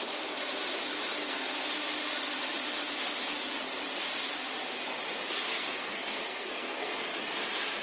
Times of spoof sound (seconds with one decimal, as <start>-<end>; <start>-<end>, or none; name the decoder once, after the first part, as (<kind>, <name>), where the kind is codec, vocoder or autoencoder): 1.2-1.7 (codec, SNAC); 5.5-6.9